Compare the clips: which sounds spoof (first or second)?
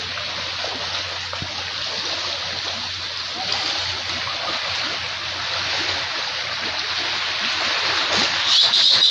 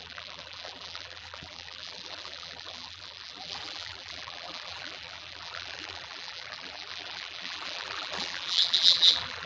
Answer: second